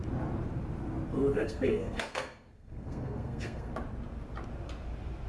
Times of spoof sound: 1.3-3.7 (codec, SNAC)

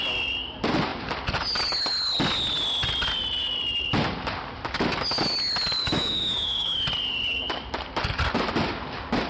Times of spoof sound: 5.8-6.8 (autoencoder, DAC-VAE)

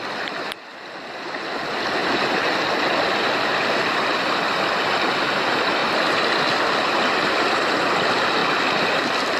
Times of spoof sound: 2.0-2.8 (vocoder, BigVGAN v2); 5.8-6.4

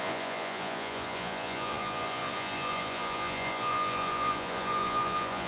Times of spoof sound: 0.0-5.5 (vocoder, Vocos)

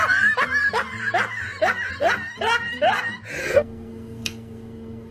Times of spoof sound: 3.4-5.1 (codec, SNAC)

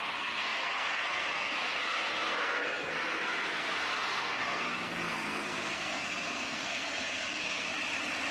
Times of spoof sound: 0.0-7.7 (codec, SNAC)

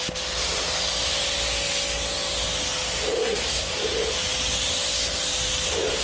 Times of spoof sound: 3.2-3.7 (codec, SNAC)